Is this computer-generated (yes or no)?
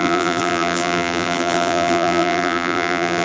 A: yes